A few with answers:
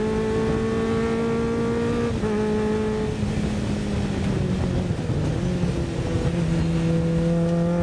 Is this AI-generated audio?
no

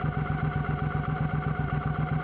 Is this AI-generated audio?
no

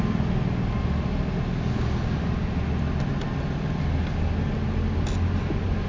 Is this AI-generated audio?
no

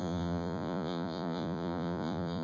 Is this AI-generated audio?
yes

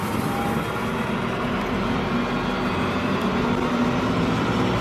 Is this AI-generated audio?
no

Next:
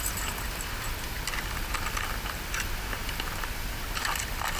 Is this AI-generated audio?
no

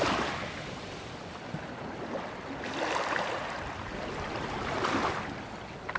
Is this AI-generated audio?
no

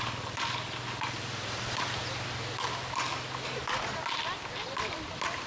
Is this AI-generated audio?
no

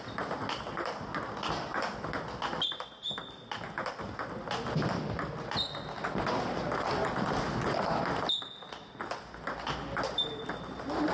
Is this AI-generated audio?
no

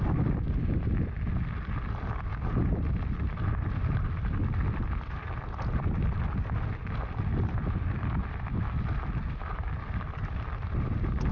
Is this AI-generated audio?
no